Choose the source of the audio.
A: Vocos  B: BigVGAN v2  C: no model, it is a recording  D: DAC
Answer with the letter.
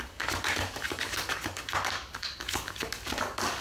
D